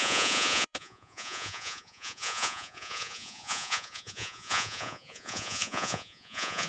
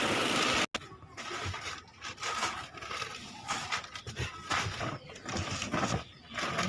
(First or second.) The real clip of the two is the second